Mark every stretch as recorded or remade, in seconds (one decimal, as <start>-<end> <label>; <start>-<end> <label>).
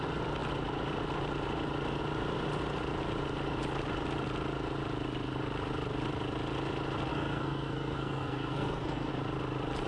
0.0-7.1 recorded; 7.1-9.1 remade; 9.1-9.9 recorded